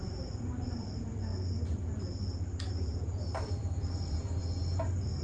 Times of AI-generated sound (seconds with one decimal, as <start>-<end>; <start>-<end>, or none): 0.0-1.3; 2.7-4.4